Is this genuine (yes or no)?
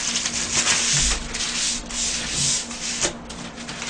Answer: yes